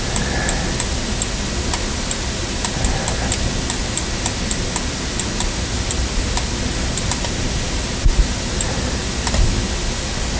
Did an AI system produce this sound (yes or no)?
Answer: no